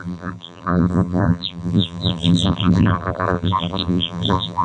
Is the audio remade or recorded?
remade